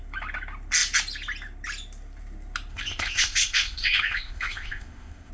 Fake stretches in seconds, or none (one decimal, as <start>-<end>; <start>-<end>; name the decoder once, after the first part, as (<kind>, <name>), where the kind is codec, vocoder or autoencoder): 2.7-5.3 (codec, ZipCodec)